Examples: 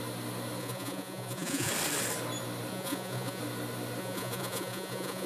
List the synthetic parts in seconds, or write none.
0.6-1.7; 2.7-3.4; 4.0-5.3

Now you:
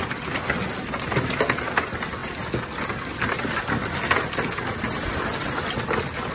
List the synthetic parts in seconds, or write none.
none

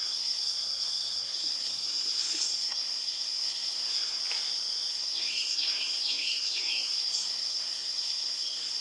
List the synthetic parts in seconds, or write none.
0.0-4.2; 4.9-8.8

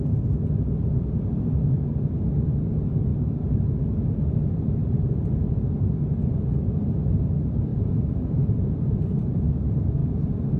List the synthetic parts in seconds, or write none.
3.1-3.7; 4.8-5.5; 7.7-9.3; 10.0-10.6